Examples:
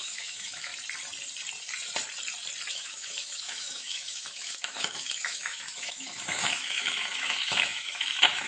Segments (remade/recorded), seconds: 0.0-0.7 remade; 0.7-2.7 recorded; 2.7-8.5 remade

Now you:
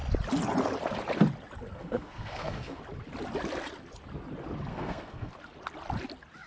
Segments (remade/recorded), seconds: 0.0-1.8 recorded; 1.8-2.8 remade; 2.8-4.7 recorded; 4.7-5.3 remade; 5.3-6.5 recorded

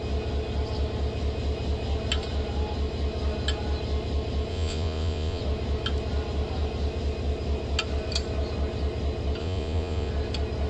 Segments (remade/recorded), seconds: 0.0-4.5 recorded; 4.5-5.4 remade; 5.4-9.4 recorded; 9.4-10.1 remade; 10.1-10.7 recorded